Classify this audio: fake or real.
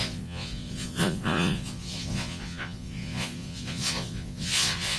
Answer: fake